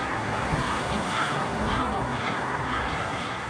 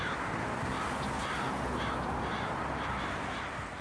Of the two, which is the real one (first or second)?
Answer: second